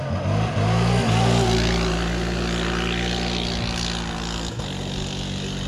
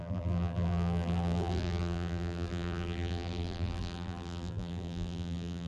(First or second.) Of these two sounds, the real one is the first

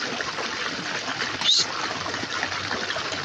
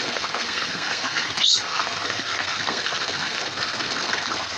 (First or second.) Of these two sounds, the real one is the first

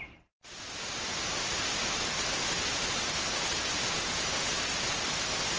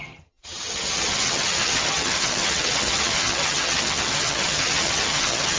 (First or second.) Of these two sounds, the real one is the first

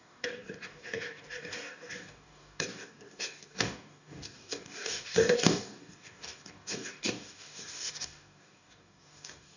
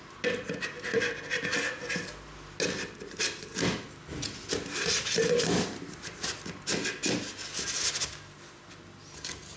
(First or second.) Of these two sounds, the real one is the second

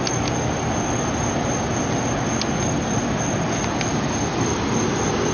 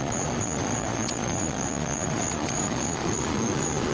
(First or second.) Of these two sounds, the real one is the first